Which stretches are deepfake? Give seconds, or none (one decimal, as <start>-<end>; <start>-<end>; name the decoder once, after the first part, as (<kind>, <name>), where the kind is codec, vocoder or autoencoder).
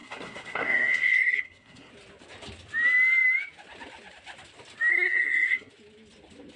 0.0-1.9 (codec, SNAC); 4.9-5.7